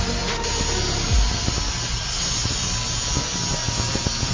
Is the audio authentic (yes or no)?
yes